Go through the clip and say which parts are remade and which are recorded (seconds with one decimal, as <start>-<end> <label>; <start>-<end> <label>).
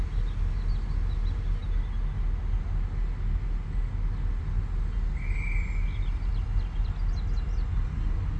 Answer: 0.0-8.4 recorded